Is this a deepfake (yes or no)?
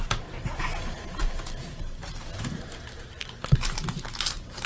no